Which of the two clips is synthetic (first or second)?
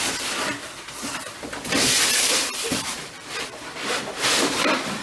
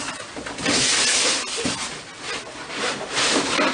first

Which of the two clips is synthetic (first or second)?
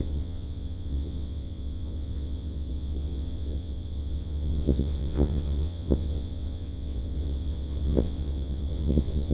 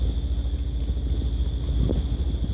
first